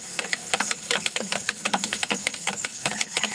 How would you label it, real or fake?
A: fake